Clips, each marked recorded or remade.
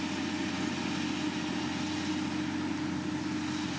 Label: recorded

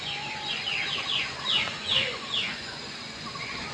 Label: remade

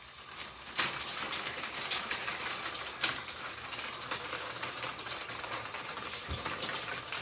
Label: recorded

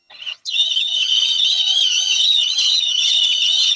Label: remade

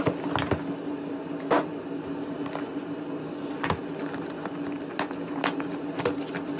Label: recorded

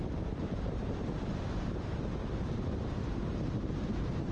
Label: remade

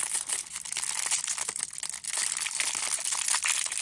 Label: recorded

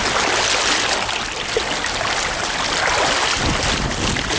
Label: recorded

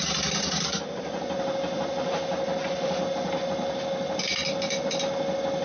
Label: recorded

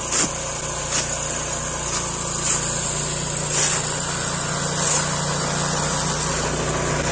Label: recorded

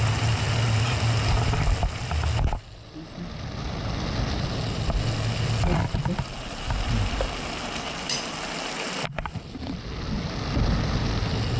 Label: recorded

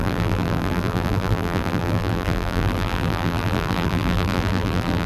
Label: remade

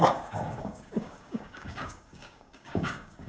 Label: remade